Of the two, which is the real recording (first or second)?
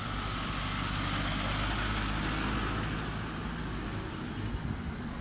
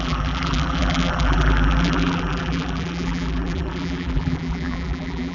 first